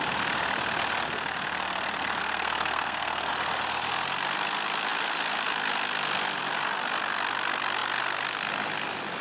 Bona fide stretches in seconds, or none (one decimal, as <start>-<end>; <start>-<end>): 0.0-2.2; 3.3-9.2